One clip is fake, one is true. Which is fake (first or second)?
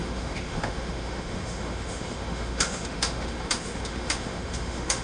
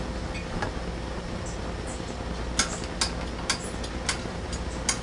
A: first